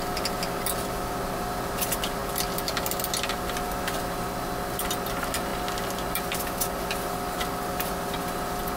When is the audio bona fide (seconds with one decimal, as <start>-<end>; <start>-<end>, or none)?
0.0-8.8

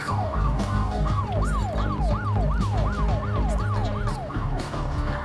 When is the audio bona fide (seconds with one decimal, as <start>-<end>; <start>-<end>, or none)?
1.2-4.3

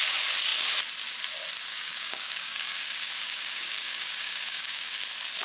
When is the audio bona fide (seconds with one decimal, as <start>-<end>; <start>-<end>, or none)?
0.0-1.7; 4.9-5.4

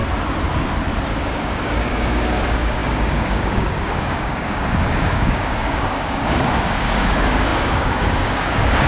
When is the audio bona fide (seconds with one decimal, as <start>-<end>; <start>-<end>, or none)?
0.0-1.1

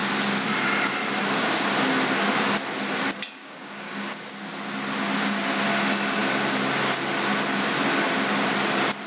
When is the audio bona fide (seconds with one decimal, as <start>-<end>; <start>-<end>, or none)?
0.0-3.4; 4.2-9.1